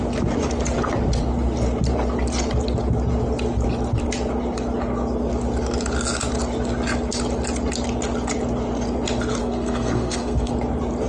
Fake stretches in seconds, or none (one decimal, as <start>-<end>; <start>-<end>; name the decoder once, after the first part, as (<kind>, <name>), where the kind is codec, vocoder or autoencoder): 9.4-10.5 (codec, SNAC)